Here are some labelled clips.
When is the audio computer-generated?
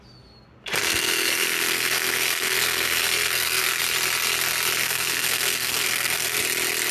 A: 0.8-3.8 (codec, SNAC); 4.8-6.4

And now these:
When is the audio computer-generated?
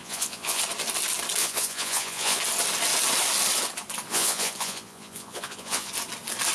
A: 0.0-0.6 (vocoder, Vocos); 1.4-2.4; 4.1-5.9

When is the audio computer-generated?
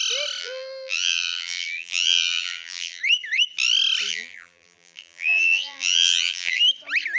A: 0.4-3.0 (vocoder, BigVGAN v2); 4.1-6.6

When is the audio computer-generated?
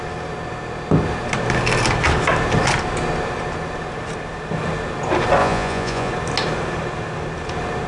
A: 5.4-6.1 (vocoder, Vocos)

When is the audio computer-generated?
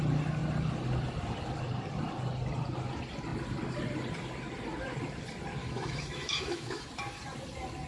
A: 5.6-6.9 (autoencoder, DAC-VAE)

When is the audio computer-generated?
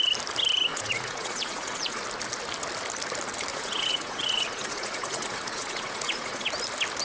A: 0.7-2.0 (vocoder, Vocos); 3.5-6.5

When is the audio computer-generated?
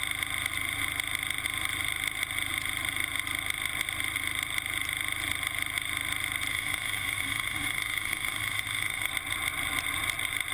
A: 6.5-9.1 (autoencoder, DAC-VAE)